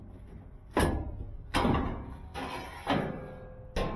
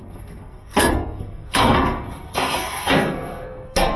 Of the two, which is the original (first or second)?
first